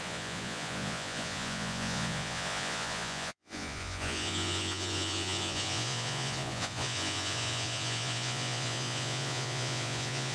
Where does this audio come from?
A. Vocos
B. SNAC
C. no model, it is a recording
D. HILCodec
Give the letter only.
A